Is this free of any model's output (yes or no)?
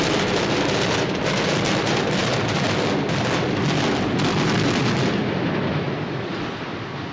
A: yes